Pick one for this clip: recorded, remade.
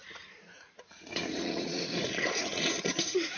remade